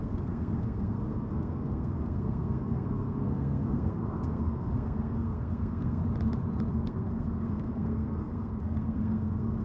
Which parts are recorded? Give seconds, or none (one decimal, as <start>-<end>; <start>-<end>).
6.0-6.7